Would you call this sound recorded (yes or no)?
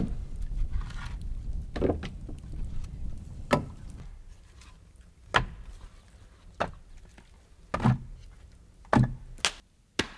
yes